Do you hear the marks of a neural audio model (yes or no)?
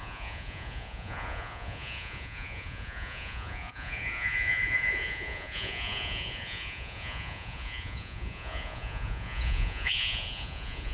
yes